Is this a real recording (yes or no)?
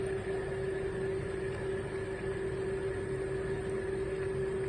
yes